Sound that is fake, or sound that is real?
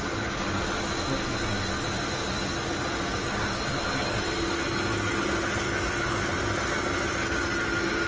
real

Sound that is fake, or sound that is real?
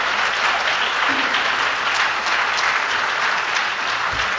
real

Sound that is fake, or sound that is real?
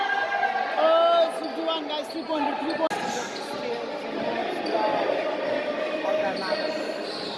real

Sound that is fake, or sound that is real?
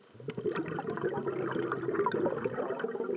real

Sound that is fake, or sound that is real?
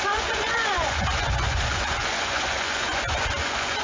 fake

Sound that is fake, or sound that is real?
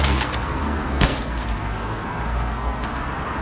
fake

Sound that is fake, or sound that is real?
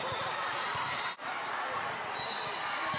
real